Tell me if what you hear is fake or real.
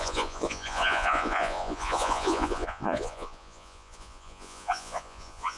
fake